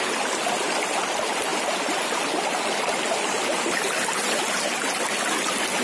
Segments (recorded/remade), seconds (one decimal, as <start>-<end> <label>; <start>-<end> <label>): 0.0-5.8 recorded